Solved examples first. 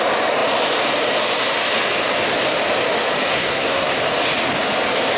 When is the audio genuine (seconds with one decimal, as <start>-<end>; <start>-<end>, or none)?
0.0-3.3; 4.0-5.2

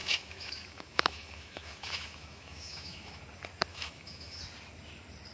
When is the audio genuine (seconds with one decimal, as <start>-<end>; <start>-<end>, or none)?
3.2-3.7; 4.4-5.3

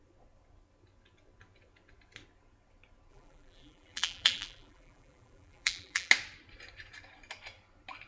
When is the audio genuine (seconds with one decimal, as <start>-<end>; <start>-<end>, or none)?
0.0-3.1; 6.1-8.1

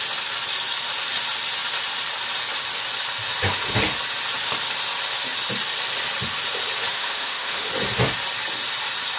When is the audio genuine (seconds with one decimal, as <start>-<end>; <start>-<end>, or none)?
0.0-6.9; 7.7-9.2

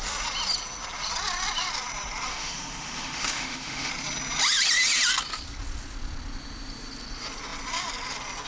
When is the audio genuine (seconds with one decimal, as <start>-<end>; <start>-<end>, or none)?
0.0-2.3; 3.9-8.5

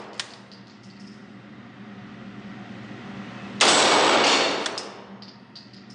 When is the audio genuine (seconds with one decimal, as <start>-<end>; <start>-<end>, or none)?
0.0-5.9